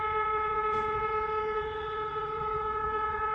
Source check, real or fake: fake